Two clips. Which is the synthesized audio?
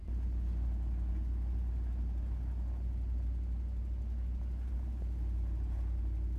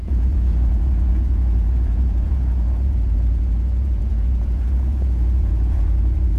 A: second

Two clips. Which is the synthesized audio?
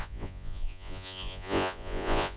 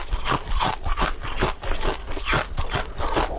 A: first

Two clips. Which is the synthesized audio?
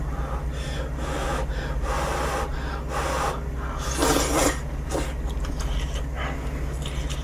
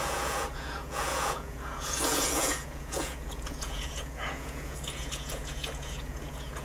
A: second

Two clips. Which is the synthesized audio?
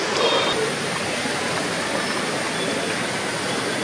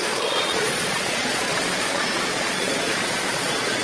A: second